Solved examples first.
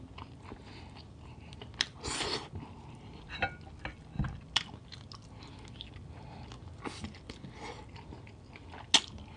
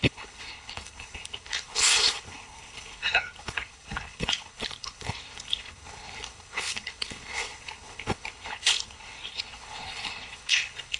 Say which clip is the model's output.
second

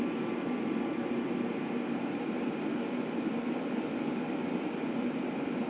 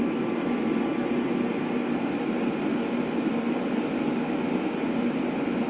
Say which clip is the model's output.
first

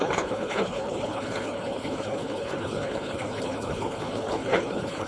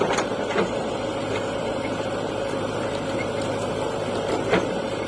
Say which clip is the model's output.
first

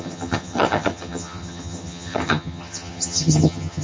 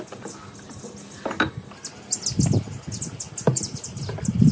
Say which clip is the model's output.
first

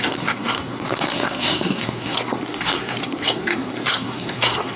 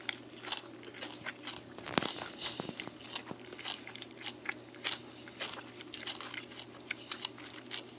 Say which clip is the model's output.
first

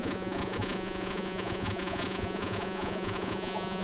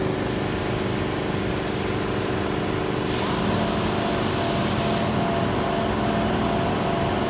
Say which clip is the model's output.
first